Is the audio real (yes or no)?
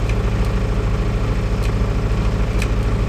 yes